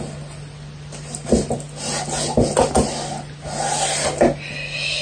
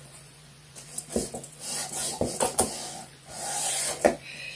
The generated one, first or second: second